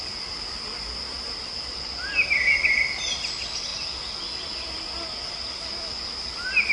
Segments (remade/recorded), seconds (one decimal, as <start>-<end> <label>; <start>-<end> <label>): 0.0-6.7 recorded